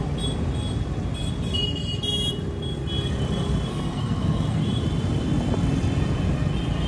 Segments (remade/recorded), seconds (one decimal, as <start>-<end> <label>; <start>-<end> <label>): 0.0-3.7 recorded; 3.7-4.6 remade; 4.6-6.9 recorded